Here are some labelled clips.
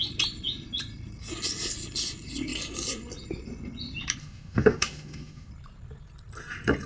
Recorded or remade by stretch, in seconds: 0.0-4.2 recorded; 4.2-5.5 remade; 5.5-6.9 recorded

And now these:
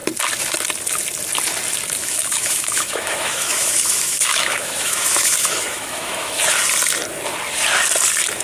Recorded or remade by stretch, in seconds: 0.0-2.0 recorded; 2.0-6.4 remade; 6.4-8.4 recorded

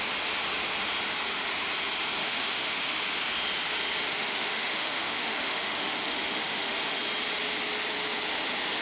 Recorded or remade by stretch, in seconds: 0.0-2.2 recorded; 2.2-3.0 remade; 3.0-4.1 recorded; 4.1-7.0 remade; 7.0-8.8 recorded

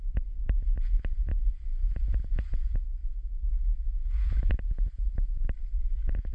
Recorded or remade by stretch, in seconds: 0.0-6.3 recorded

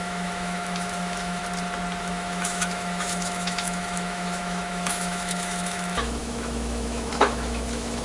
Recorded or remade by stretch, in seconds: 0.0-1.4 remade; 1.4-2.0 recorded; 2.0-8.0 remade

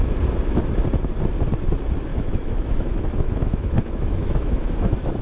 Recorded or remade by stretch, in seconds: 0.0-2.1 recorded; 2.1-5.2 remade

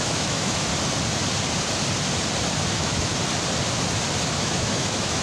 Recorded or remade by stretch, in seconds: 0.0-0.7 remade; 0.7-2.7 recorded; 2.7-3.1 remade; 3.1-4.4 recorded; 4.4-5.2 remade